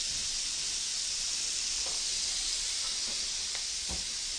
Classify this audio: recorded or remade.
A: recorded